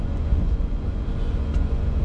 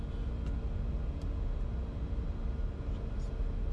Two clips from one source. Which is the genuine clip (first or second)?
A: second